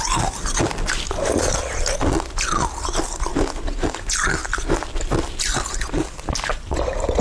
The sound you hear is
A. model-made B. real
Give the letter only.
B